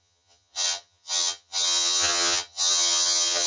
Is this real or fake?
fake